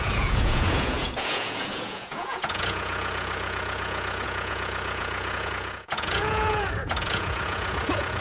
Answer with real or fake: fake